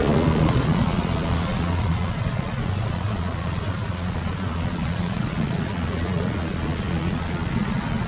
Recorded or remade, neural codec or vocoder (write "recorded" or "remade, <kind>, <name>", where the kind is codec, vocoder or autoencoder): remade, vocoder, Vocos